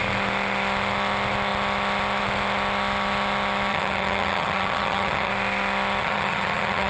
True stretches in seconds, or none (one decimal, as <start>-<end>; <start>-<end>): 0.0-3.7; 5.3-6.0